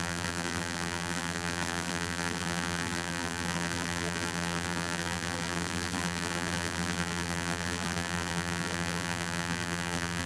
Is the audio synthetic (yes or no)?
yes